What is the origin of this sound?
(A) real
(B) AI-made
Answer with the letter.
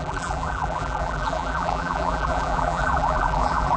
B